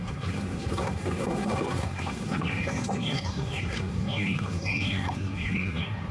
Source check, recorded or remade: remade